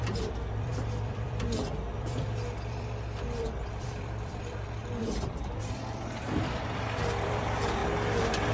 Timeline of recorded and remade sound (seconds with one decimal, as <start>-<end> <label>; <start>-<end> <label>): 0.0-7.8 remade; 7.8-8.5 recorded